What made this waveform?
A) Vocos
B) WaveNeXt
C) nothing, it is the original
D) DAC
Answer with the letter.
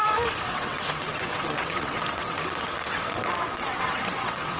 B